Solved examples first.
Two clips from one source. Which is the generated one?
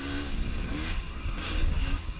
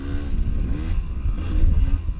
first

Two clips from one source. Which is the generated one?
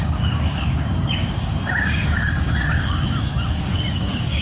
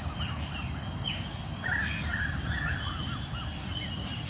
first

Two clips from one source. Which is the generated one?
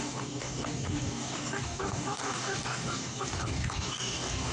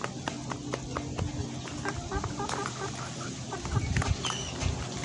first